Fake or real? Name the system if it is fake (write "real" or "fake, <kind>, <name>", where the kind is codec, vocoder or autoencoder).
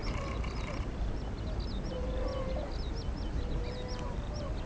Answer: real